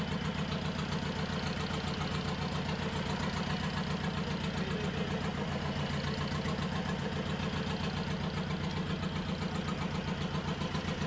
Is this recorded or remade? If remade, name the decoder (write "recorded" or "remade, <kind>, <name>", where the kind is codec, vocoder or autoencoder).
recorded